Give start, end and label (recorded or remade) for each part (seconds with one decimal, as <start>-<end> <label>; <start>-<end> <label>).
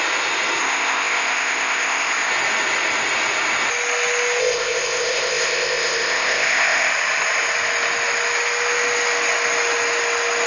0.0-0.6 recorded; 0.6-2.3 remade; 2.3-4.4 recorded; 4.4-6.9 remade; 6.9-10.5 recorded